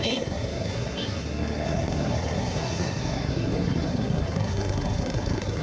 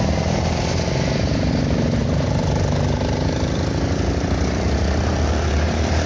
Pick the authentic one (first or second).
second